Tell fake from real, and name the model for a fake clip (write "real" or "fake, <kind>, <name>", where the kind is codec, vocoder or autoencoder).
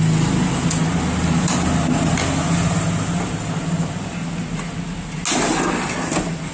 real